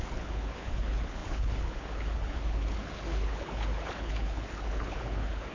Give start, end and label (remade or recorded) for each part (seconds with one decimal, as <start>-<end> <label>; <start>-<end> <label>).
0.0-5.5 remade